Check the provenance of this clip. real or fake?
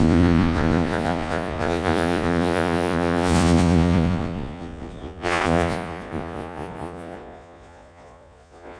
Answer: fake